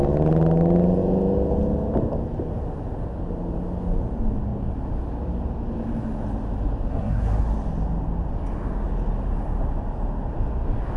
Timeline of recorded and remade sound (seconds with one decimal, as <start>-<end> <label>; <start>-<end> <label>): 0.0-6.9 recorded; 6.9-7.4 remade; 7.4-11.0 recorded